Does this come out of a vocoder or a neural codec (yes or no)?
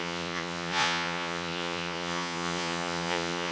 yes